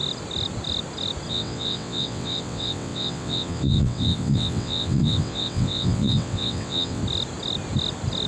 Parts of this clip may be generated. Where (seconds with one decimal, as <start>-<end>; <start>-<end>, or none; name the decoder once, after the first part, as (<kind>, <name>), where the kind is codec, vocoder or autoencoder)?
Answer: 1.3-7.0 (vocoder, WaveNeXt)